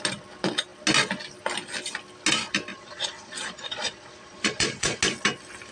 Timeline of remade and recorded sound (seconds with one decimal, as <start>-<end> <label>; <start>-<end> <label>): 0.0-2.7 recorded; 2.7-5.0 remade; 5.0-5.7 recorded